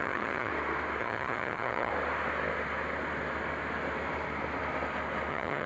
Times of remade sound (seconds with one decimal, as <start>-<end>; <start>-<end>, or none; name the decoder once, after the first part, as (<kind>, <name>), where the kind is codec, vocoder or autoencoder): 0.0-0.5 (vocoder, HiFi-GAN); 1.0-1.9; 5.3-5.7